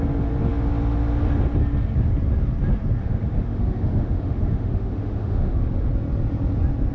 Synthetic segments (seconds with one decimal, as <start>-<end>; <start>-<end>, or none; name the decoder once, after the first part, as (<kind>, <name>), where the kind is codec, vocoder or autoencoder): 3.0-5.9 (autoencoder, DAC-VAE)